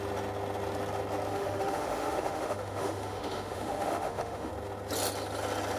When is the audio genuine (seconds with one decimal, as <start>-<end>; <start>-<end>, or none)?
0.0-1.3; 4.5-5.8